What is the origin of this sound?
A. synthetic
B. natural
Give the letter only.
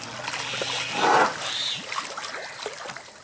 B